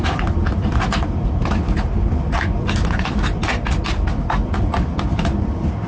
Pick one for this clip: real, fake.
real